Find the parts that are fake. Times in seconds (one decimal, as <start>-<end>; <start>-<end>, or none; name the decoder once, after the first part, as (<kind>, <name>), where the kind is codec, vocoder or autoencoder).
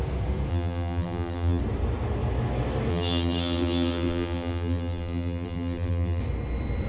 0.5-1.6 (vocoder, BigVGAN v2); 2.9-6.2